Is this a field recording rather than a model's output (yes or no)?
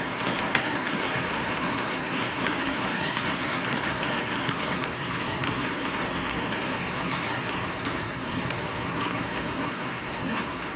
no